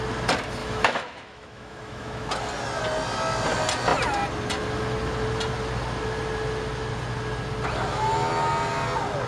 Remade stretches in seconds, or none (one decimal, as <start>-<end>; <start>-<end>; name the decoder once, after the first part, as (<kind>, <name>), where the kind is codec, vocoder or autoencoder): 0.6-2.3 (autoencoder, DAC-VAE)